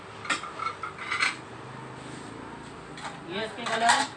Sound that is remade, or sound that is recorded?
recorded